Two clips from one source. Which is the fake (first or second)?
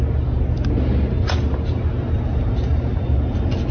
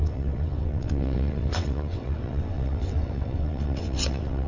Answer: second